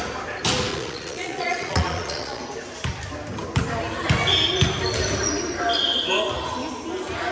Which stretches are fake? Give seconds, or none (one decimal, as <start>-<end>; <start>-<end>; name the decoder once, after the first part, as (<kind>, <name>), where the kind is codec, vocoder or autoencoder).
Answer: 0.7-2.4 (vocoder, Vocos)